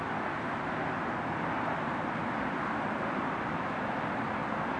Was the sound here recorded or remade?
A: recorded